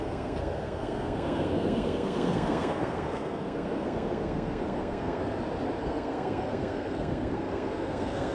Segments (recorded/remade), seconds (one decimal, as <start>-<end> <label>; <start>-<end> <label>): 0.0-5.2 remade; 5.2-5.8 recorded; 5.8-8.3 remade